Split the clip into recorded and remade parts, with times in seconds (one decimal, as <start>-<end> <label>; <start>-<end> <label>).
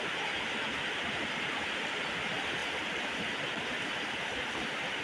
0.0-5.0 recorded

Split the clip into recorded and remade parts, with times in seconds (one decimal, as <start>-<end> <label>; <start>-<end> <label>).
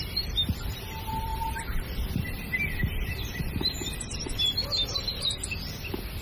0.0-6.2 remade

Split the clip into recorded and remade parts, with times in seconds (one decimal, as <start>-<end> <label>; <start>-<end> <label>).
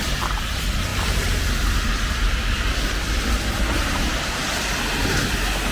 0.0-4.4 remade; 4.4-5.7 recorded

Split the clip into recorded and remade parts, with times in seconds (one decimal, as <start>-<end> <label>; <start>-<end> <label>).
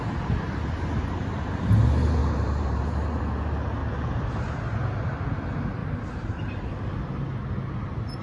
0.0-2.2 recorded; 2.2-3.2 remade; 3.2-3.8 recorded; 3.8-4.5 remade; 4.5-5.8 recorded; 5.8-6.7 remade; 6.7-8.2 recorded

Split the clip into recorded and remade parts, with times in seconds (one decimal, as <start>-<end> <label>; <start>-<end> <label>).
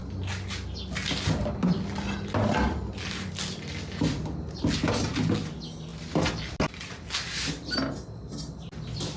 0.0-9.2 recorded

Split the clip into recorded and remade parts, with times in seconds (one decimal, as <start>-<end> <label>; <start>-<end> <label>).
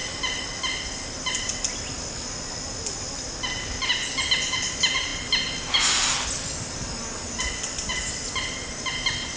0.0-9.4 recorded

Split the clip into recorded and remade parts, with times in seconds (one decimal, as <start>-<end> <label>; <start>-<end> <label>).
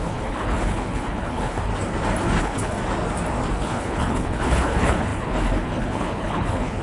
0.0-1.7 remade; 1.7-2.4 recorded; 2.4-2.8 remade; 2.8-3.5 recorded; 3.5-6.8 remade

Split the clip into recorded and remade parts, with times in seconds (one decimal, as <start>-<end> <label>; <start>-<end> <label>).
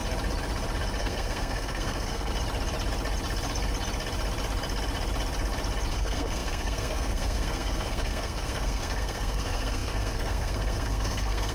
0.0-1.0 recorded; 1.0-2.3 remade; 2.3-5.9 recorded; 5.9-11.5 remade